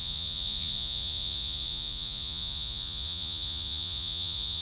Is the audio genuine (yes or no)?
no